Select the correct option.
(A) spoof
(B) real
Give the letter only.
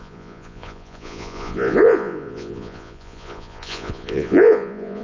A